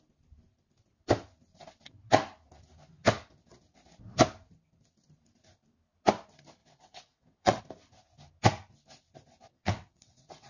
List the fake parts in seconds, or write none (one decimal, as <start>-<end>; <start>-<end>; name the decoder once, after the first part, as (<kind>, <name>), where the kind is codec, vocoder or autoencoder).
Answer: 6.6-7.6 (vocoder, WaveNeXt); 9.5-10.5

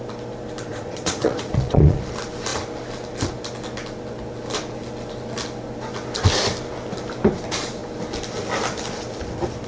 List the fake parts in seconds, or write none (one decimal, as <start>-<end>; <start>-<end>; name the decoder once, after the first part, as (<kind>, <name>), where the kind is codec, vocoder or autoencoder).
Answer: 0.7-2.0 (vocoder, Vocos)